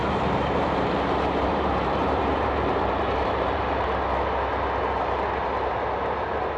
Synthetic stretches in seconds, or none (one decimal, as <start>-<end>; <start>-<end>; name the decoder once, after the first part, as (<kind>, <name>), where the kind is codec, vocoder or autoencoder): 0.0-4.0 (vocoder, BigVGAN v2)